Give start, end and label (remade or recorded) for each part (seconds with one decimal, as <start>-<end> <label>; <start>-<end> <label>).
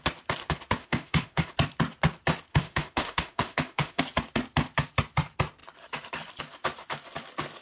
0.0-0.8 recorded; 0.8-1.5 remade; 1.5-2.5 recorded; 2.5-4.0 remade; 4.0-7.6 recorded